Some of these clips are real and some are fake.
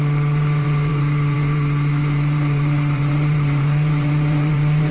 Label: fake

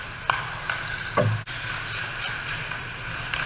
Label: real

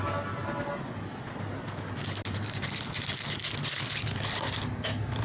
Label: real